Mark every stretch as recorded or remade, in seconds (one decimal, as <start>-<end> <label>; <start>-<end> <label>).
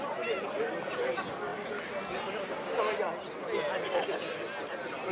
0.0-5.1 recorded